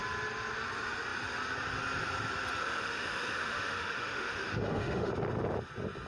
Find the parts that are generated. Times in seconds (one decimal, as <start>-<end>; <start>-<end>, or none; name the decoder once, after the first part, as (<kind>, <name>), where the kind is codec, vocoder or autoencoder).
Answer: 2.6-5.1 (autoencoder, DAC-VAE)